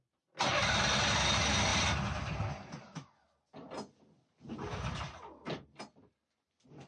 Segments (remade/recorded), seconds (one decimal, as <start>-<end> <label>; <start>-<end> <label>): 0.0-6.9 recorded